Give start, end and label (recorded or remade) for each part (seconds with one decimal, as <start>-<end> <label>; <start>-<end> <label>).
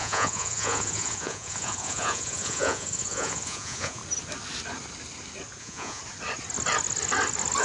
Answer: 0.0-4.0 remade; 4.0-5.6 recorded; 5.6-6.0 remade; 6.0-7.6 recorded